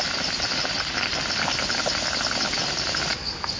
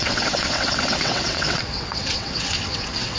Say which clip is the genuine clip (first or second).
first